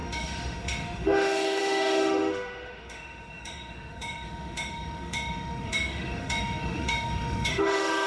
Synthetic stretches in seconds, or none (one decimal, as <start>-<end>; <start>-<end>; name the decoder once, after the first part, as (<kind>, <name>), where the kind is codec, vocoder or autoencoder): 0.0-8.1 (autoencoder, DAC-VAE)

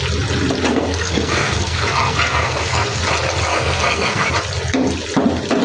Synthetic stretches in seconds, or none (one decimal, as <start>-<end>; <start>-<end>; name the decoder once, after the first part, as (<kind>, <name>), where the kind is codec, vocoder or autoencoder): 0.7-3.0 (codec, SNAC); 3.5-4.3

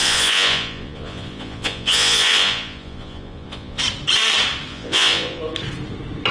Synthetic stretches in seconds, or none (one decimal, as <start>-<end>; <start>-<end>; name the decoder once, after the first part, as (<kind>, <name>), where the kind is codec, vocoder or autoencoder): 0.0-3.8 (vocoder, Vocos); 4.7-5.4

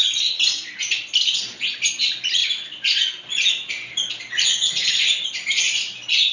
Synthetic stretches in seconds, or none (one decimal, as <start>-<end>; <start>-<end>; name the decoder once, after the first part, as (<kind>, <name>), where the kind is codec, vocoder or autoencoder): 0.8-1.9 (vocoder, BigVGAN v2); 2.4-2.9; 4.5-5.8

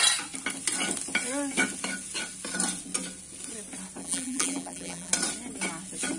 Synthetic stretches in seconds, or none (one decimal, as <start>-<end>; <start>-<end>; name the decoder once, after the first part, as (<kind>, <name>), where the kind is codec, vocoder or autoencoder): 4.0-5.1 (vocoder, BigVGAN v2)

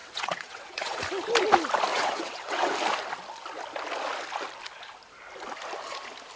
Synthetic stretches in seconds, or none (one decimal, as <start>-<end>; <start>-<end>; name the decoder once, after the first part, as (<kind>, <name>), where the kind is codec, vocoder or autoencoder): 0.0-1.0 (vocoder, WaveNeXt); 1.9-2.7

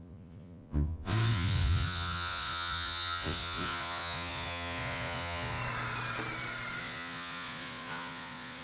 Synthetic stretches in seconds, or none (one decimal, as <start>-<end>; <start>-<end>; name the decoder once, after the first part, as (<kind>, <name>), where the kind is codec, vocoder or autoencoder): 0.0-5.6 (vocoder, Vocos); 6.8-8.6